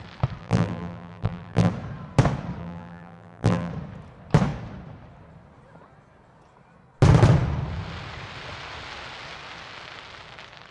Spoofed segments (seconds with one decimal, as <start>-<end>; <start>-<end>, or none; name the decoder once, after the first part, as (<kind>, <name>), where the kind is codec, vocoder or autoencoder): 0.4-1.7 (vocoder, BigVGAN v2); 2.6-3.7